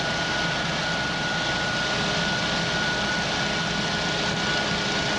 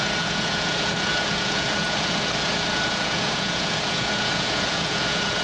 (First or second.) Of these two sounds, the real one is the first